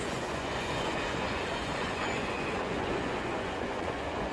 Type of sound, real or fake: fake